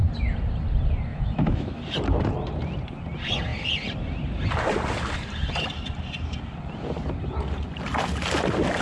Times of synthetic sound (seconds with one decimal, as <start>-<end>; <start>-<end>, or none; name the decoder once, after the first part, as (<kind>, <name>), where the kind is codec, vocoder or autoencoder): 1.1-1.8 (autoencoder, DAC-VAE)